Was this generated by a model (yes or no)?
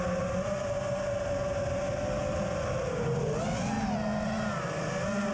no